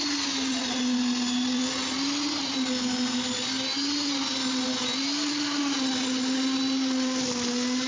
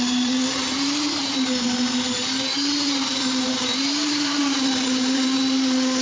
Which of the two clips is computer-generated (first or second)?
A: second